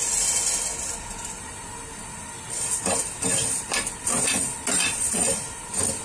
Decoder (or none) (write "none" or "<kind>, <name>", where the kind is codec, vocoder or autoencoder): none